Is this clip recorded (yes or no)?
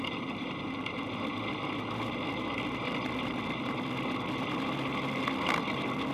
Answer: yes